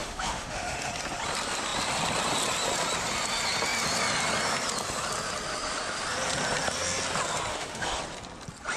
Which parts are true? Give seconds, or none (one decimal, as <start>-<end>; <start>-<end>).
0.9-7.5; 8.0-8.8